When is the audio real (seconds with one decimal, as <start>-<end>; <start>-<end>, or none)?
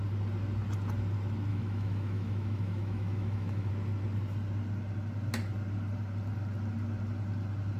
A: 0.0-1.5; 3.7-7.8